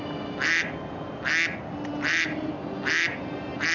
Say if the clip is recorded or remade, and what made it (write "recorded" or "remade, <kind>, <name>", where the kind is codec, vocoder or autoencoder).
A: recorded